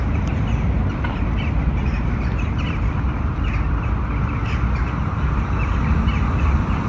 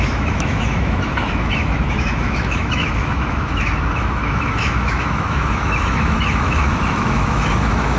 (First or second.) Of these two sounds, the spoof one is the second